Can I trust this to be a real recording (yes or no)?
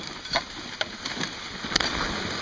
yes